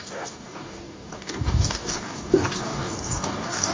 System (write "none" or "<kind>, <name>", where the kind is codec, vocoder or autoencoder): codec, DAC